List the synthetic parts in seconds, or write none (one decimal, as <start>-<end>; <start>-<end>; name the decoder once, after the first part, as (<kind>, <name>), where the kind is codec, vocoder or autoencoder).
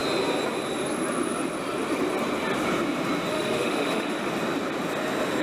3.3-4.3 (autoencoder, DAC-VAE)